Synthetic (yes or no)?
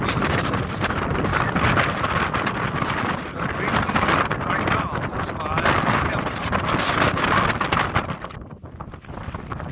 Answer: no